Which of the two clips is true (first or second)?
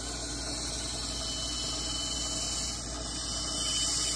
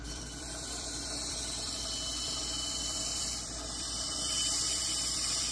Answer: first